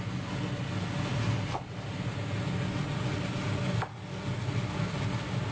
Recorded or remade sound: recorded